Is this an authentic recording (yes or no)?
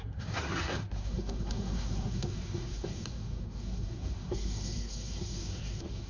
no